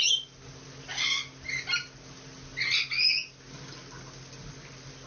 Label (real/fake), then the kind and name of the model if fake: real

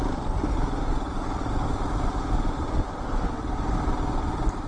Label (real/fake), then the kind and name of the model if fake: real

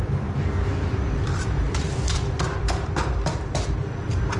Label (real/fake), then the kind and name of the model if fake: fake, vocoder, BigVGAN v2